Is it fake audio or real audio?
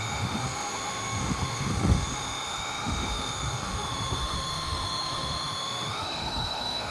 fake